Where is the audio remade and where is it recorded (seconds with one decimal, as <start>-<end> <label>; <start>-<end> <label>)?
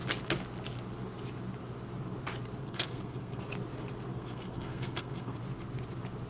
0.0-2.6 recorded; 2.6-3.4 remade; 3.4-4.1 recorded; 4.1-5.4 remade; 5.4-6.3 recorded